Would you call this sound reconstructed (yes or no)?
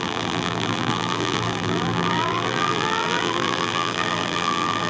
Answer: yes